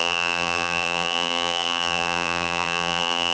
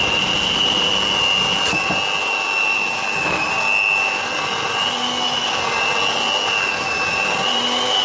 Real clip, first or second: second